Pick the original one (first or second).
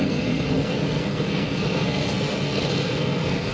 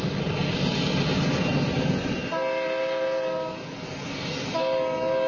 second